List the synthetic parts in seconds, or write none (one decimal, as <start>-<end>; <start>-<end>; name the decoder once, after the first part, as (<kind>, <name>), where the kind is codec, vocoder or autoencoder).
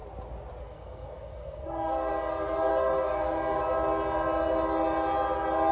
0.6-2.1 (codec, SNAC); 2.7-3.6